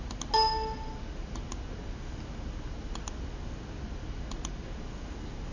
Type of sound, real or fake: real